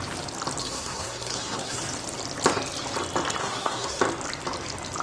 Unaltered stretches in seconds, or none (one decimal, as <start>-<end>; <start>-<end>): 0.0-0.6; 1.8-3.4; 4.0-5.0